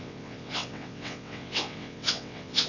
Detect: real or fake fake